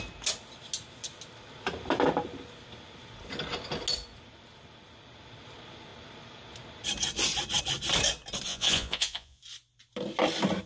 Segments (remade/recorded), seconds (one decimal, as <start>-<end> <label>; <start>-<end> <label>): 0.0-8.5 recorded; 8.5-9.4 remade; 9.4-10.7 recorded